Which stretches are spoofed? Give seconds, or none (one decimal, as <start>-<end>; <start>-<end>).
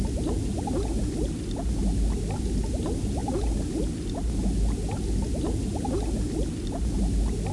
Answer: none